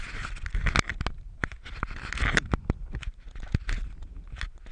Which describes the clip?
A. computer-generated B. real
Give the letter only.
B